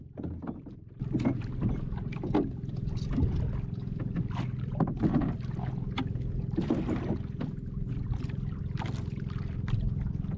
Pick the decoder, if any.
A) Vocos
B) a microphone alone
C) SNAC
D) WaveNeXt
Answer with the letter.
B